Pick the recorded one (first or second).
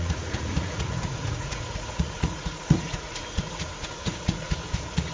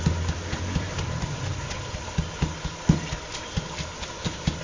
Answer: second